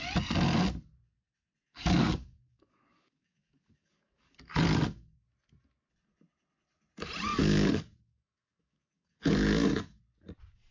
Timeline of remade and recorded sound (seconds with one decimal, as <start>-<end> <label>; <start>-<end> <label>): 0.0-1.7 recorded; 1.7-4.6 remade; 4.6-7.3 recorded; 7.3-10.0 remade; 10.0-10.7 recorded